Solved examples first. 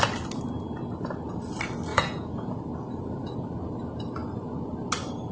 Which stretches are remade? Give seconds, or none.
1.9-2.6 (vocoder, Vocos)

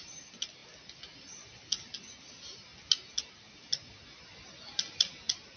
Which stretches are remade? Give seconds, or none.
none

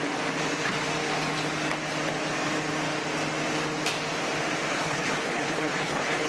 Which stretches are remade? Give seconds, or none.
4.7-6.3 (codec, HILCodec)

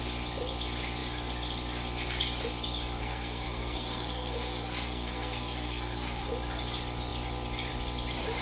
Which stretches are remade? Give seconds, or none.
3.0-6.3 (codec, SNAC)

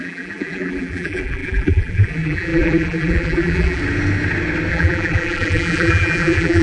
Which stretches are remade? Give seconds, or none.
0.0-3.8 (vocoder, BigVGAN v2); 4.7-6.6

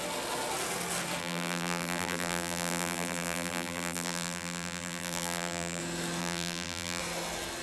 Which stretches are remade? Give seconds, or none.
1.2-5.8 (vocoder, BigVGAN v2); 6.2-7.0